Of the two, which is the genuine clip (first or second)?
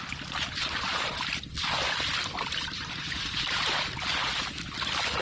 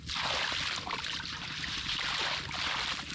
second